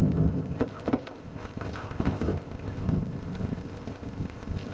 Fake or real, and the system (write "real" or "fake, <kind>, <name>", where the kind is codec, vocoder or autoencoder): fake, codec, ZipCodec